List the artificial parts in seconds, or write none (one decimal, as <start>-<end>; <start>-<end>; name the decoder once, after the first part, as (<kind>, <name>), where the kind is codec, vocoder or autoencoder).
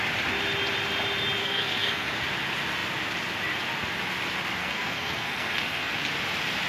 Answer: 1.4-2.1 (codec, SNAC); 4.6-5.9